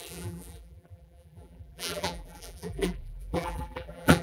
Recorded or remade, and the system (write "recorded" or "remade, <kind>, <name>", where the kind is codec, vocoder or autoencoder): remade, vocoder, BigVGAN v2